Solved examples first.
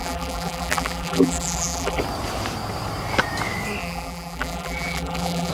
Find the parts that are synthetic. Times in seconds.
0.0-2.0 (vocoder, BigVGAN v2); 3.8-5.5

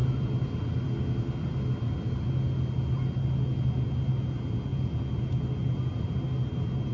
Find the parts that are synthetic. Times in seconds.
none

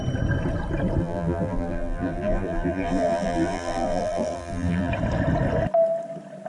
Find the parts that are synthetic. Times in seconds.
1.0-4.9 (vocoder, BigVGAN v2)

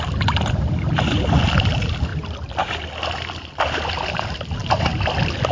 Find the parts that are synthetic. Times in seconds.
0.0-5.5 (vocoder, BigVGAN v2)

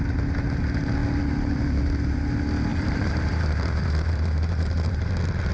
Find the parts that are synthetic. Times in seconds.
2.7-5.1 (vocoder, BigVGAN v2)

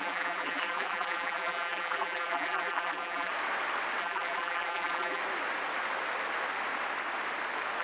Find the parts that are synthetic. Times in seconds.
0.0-3.3 (vocoder, BigVGAN v2); 4.0-5.2